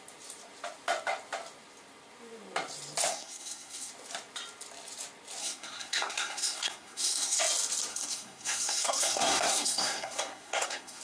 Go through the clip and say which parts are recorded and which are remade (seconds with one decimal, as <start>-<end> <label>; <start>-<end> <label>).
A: 0.0-3.1 recorded; 3.1-3.9 remade; 3.9-5.4 recorded; 5.4-7.4 remade; 7.4-7.9 recorded; 7.9-11.0 remade